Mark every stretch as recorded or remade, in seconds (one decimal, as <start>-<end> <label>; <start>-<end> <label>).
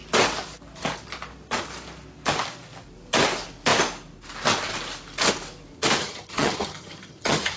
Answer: 0.0-6.0 recorded; 6.0-7.6 remade